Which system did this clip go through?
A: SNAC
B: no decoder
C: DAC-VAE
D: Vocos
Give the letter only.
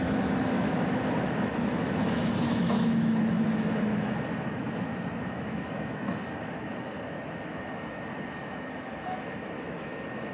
C